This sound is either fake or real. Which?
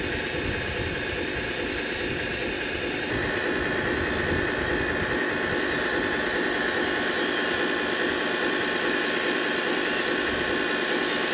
real